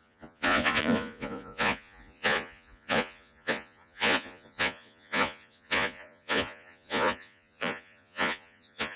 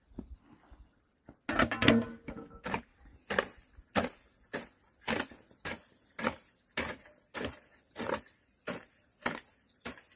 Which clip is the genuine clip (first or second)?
second